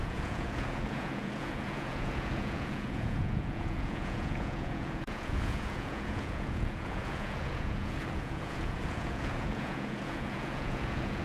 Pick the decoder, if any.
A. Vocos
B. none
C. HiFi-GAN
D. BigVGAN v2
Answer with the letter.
A